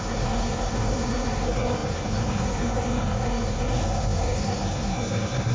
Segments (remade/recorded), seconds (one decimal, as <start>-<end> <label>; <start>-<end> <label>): 0.0-5.5 remade